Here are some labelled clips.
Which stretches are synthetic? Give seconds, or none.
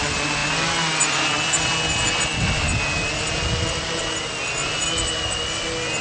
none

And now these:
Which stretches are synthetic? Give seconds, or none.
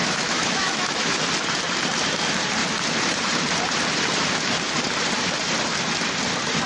0.0-1.2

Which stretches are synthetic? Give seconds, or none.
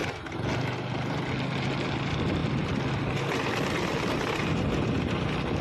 none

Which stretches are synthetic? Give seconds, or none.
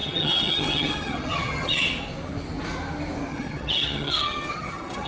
0.0-1.8; 3.3-5.1